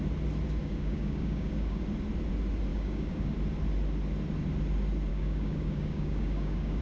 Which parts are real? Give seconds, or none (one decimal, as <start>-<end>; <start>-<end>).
0.0-0.6; 1.8-2.7; 3.3-5.1